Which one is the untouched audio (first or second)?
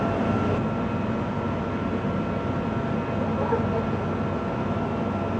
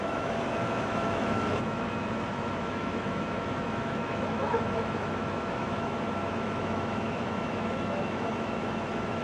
first